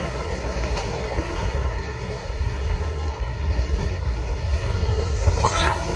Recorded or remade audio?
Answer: remade